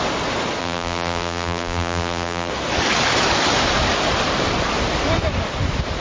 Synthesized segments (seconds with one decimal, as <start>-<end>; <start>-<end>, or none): 0.6-2.5